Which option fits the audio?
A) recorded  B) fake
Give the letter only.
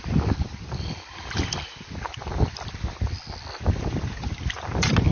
A